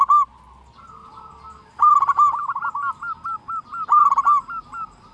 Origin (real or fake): real